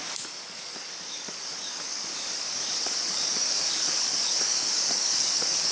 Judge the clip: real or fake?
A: fake